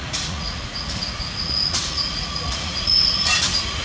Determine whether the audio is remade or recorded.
remade